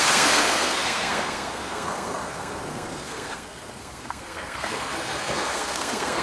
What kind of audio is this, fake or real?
fake